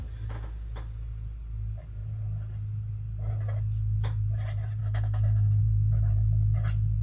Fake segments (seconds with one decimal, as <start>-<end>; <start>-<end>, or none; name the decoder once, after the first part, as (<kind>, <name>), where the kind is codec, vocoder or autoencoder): 4.8-5.6 (codec, SNAC)